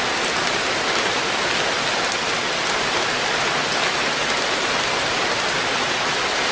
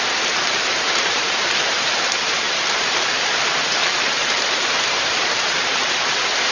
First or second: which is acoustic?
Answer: first